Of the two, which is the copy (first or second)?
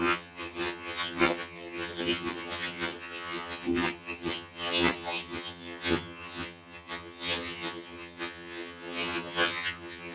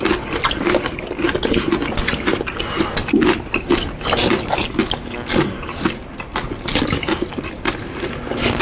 first